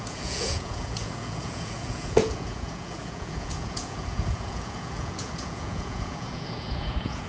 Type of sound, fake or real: fake